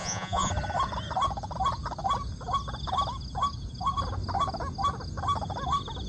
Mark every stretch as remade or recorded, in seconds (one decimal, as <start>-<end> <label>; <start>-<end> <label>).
0.0-0.5 remade; 0.5-6.1 recorded